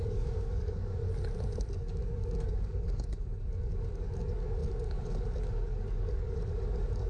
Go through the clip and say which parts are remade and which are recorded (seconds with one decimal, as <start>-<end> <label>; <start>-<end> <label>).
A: 0.0-1.0 remade; 1.0-1.7 recorded; 1.7-7.1 remade